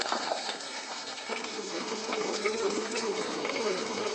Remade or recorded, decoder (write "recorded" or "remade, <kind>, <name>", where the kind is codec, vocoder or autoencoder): remade, codec, SNAC